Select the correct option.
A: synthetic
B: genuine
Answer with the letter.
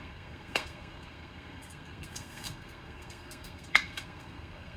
A